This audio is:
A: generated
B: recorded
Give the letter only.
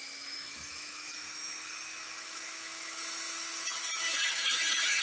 A